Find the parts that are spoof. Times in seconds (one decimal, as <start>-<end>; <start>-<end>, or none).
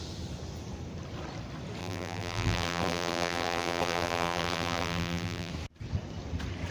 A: 1.8-5.5